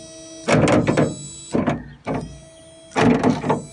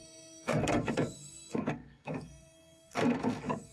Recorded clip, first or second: first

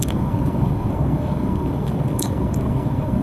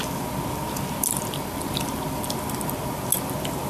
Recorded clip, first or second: second